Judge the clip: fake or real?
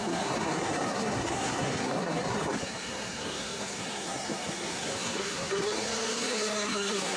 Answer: fake